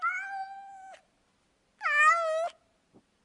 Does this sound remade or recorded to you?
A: recorded